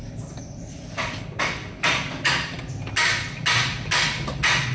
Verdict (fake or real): real